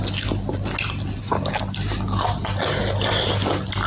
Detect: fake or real real